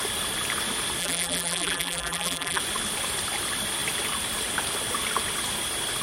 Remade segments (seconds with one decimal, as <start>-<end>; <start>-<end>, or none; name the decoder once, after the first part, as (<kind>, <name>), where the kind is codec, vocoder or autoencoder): 1.0-2.6 (vocoder, BigVGAN v2)